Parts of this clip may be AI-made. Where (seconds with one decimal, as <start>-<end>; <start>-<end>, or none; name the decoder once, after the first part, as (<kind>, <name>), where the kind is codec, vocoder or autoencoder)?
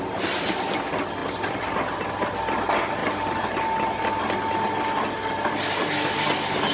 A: none